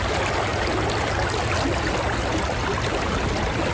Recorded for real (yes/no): yes